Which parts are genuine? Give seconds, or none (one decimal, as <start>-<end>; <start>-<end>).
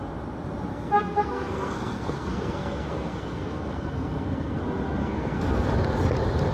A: 0.0-0.7; 4.6-5.0; 5.7-6.5